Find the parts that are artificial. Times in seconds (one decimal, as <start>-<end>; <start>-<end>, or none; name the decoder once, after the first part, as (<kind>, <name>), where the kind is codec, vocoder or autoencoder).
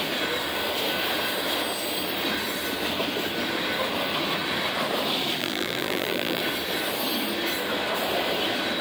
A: 5.4-6.4 (vocoder, BigVGAN v2)